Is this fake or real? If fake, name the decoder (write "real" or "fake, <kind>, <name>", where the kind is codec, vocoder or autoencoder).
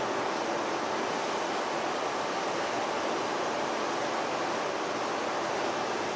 real